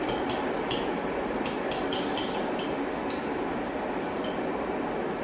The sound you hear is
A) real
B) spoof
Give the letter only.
A